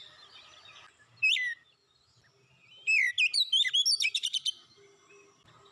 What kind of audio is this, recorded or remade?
recorded